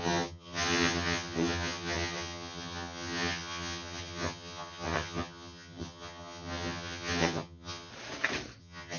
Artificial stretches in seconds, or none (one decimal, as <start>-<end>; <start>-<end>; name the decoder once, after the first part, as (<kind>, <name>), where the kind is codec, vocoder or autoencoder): 0.0-7.9 (vocoder, HiFi-GAN); 8.6-9.0